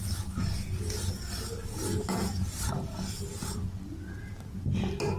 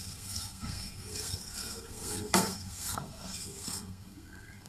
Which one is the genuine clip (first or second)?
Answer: first